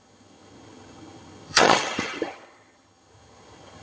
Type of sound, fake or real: fake